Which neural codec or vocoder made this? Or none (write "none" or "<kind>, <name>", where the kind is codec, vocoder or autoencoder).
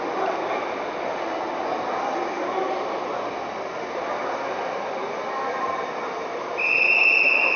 none